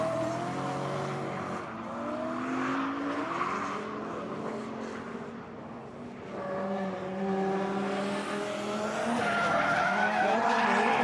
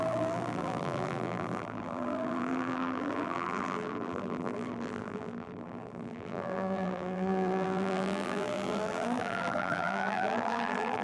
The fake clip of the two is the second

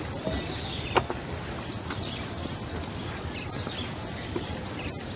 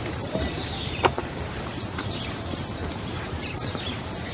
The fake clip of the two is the second